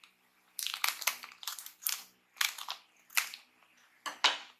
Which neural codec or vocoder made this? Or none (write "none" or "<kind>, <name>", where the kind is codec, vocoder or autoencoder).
none